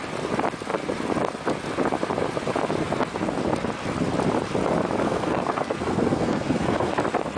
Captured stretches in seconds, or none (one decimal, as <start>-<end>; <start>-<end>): 0.0-5.0; 6.9-7.4